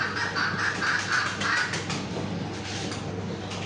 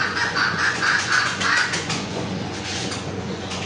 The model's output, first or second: second